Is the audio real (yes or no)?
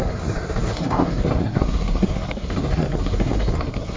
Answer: no